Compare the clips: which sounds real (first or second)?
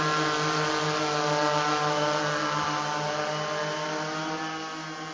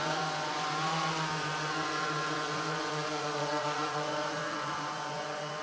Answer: first